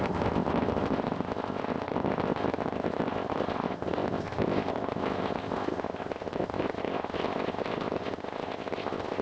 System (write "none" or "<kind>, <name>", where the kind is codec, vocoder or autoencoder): codec, ZipCodec